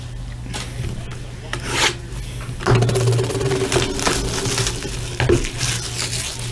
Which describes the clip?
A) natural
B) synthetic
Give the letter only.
A